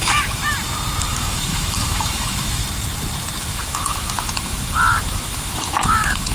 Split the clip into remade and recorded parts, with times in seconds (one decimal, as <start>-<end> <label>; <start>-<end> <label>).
0.0-0.4 remade; 0.4-1.1 recorded; 1.1-2.6 remade; 2.6-3.4 recorded; 3.4-6.3 remade